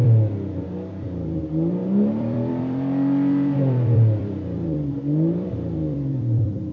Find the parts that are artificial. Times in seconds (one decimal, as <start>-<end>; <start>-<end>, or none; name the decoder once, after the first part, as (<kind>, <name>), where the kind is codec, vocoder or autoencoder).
0.0-6.7 (vocoder, BigVGAN v2)